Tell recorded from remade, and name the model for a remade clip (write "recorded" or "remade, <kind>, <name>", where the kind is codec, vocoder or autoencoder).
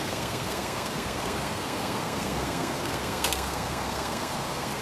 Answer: remade, codec, SNAC